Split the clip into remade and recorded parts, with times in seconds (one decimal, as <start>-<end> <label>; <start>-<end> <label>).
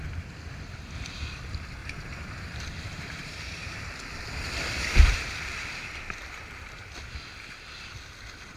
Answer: 0.0-1.8 recorded; 1.8-6.8 remade; 6.8-8.6 recorded